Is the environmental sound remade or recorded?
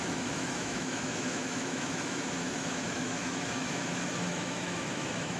remade